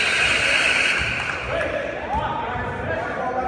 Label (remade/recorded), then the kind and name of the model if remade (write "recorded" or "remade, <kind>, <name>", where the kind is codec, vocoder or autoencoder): recorded